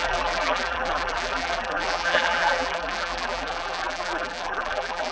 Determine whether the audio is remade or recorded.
remade